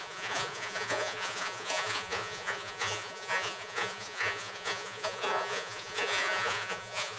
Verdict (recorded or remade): remade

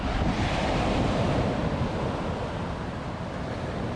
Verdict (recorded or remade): recorded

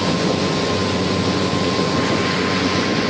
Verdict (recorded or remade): remade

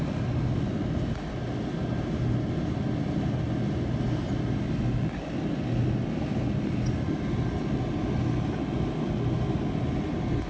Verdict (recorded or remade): recorded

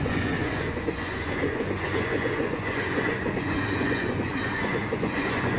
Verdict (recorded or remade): remade